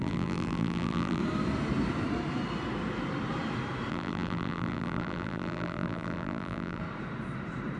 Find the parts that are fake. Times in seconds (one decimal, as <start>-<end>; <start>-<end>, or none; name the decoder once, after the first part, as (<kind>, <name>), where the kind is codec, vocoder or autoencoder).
0.0-1.2 (vocoder, BigVGAN v2); 3.9-6.8